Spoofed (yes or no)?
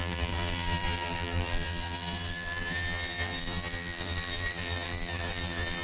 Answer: yes